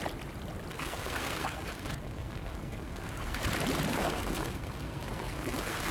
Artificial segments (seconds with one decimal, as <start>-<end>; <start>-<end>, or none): 0.7-3.4; 3.9-5.9